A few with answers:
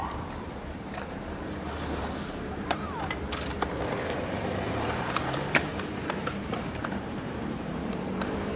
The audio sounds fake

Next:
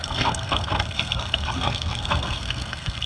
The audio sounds fake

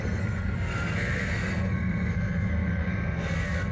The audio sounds fake